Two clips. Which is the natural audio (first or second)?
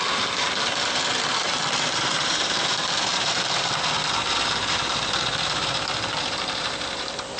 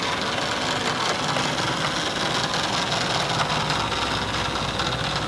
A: second